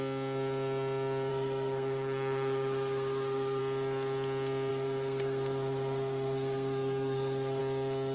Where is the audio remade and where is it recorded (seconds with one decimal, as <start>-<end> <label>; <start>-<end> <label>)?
0.0-1.3 recorded; 1.3-3.6 remade; 3.6-4.7 recorded; 4.7-7.6 remade; 7.6-8.1 recorded